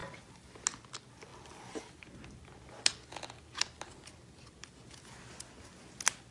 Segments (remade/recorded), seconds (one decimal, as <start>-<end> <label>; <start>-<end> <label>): 0.0-0.6 remade; 0.6-6.3 recorded

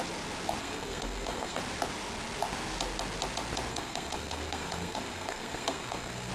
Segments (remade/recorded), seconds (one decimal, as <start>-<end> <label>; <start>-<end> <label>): 0.0-0.6 recorded; 0.6-1.6 remade; 1.6-3.7 recorded; 3.7-6.3 remade

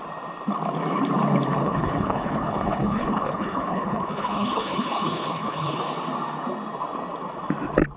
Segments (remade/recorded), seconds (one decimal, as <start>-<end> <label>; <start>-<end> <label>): 0.0-1.6 recorded; 1.6-5.8 remade; 5.8-8.0 recorded

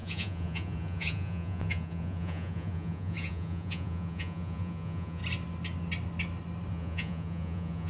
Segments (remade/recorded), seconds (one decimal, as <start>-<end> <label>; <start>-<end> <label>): 0.0-5.2 remade; 5.2-6.7 recorded; 6.7-7.9 remade

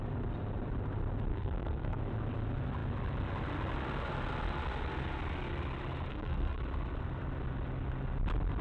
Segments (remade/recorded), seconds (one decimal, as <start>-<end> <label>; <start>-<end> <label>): 0.0-1.3 recorded; 1.3-2.0 remade; 2.0-6.1 recorded; 6.1-6.6 remade; 6.6-8.6 recorded

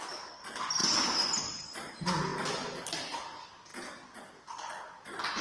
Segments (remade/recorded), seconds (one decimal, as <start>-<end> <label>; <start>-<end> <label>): 0.0-5.4 recorded

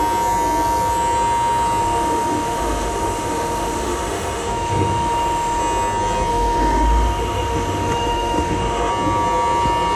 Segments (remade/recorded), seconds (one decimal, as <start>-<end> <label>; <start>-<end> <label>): 0.0-1.8 recorded; 1.8-5.6 remade; 5.6-6.3 recorded; 6.3-8.9 remade; 8.9-10.0 recorded